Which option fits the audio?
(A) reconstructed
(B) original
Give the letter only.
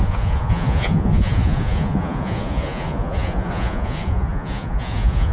A